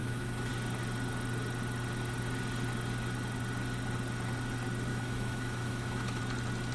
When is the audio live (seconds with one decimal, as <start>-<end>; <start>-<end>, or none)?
0.5-4.9; 6.2-6.7